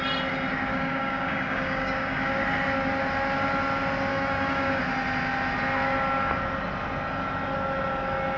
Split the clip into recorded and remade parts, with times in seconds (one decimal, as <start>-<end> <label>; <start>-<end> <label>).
0.0-0.7 recorded; 0.7-2.3 remade; 2.3-4.1 recorded; 4.1-4.8 remade; 4.8-8.4 recorded